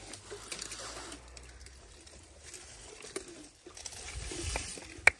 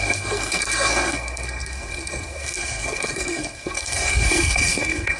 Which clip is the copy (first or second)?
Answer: second